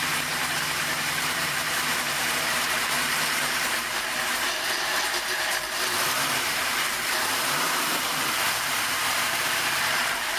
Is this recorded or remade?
remade